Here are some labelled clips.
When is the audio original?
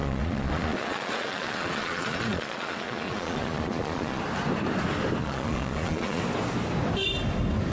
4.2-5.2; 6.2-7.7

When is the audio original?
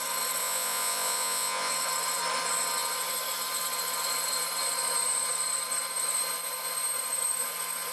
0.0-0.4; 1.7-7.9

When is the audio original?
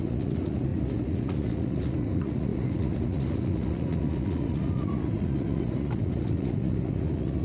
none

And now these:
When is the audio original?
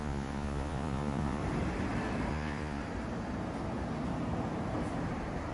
1.4-2.3; 2.8-5.5